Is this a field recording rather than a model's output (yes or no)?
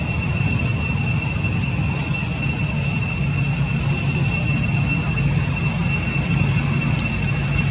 yes